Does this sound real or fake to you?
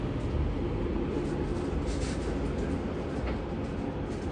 real